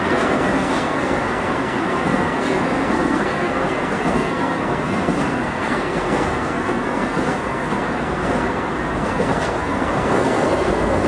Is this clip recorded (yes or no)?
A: no